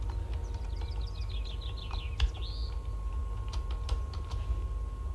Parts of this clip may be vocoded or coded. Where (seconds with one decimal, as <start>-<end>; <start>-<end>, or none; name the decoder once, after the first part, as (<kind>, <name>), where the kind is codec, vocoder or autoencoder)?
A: 2.6-3.1 (vocoder, BigVGAN v2)